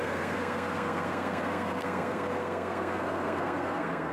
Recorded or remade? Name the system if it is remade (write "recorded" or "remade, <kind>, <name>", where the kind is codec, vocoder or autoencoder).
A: remade, codec, SNAC